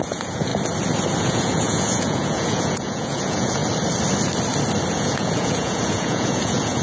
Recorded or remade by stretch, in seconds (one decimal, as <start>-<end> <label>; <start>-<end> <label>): 0.0-0.5 remade; 0.5-1.2 recorded; 1.2-3.6 remade; 3.6-4.9 recorded; 4.9-6.8 remade